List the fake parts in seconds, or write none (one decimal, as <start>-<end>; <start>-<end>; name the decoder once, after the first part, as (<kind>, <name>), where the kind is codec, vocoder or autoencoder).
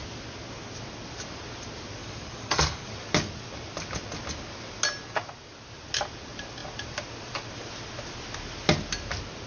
2.0-2.9 (codec, DAC)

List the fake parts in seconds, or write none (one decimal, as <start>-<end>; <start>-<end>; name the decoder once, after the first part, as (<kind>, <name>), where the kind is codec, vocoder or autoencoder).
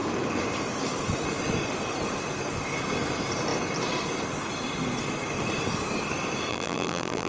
6.5-7.3 (vocoder, BigVGAN v2)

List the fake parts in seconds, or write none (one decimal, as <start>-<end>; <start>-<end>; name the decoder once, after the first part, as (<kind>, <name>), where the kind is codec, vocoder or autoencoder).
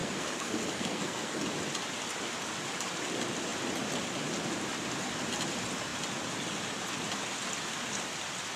0.0-1.4 (codec, SNAC)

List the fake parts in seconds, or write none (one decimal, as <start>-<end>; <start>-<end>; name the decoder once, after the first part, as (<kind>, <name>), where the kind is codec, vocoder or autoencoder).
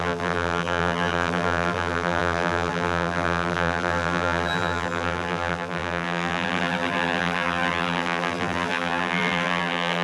0.0-10.0 (vocoder, BigVGAN v2)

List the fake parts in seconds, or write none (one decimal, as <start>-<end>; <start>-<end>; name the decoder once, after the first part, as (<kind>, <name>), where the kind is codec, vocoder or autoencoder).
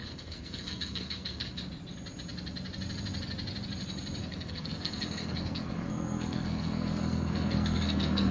0.0-1.6 (codec, SNAC); 4.2-8.3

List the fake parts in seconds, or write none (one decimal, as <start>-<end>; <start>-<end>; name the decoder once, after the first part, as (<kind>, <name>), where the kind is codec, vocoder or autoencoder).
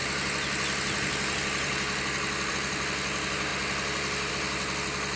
none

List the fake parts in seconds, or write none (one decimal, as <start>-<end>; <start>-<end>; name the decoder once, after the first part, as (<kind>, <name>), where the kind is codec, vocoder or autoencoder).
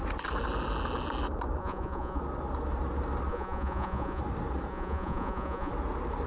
1.6-2.2 (vocoder, Vocos); 3.3-4.2; 4.7-5.7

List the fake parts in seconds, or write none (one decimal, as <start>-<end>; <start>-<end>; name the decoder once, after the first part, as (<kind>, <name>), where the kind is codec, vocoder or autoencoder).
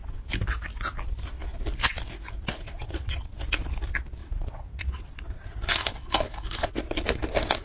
2.6-3.2 (vocoder, WaveNeXt); 4.2-5.0